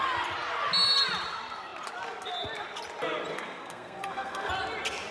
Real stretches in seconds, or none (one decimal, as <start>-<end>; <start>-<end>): 0.0-3.3; 4.5-5.1